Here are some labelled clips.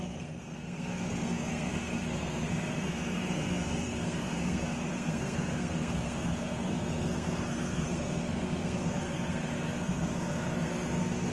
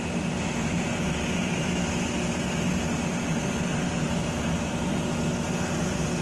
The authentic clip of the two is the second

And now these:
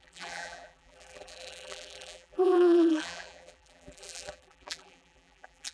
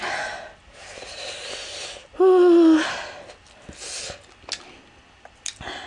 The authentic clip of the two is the second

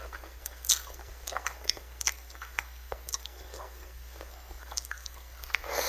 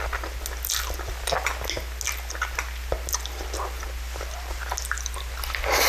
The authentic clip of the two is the second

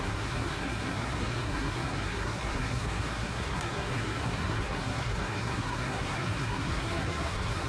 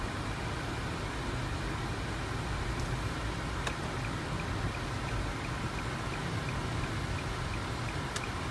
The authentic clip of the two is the second